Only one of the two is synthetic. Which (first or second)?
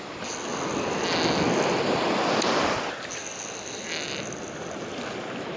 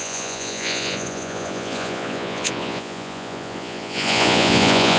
second